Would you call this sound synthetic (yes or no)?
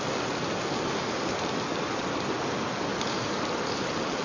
no